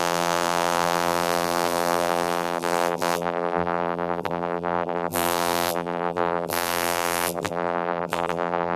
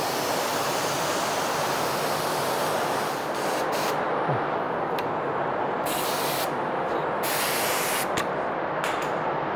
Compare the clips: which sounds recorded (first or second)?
second